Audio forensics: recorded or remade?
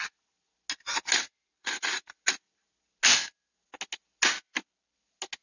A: recorded